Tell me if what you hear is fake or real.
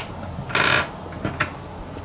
real